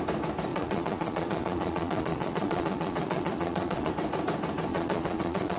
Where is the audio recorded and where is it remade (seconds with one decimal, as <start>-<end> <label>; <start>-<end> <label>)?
0.0-0.5 recorded; 0.5-3.9 remade; 3.9-4.7 recorded; 4.7-5.6 remade